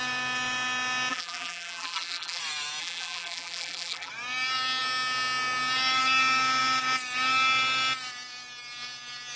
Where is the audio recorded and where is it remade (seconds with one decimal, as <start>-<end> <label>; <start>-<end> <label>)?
0.0-1.1 recorded; 1.1-2.4 remade; 2.4-2.8 recorded; 2.8-4.1 remade; 4.1-9.4 recorded